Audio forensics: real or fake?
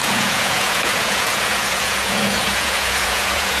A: fake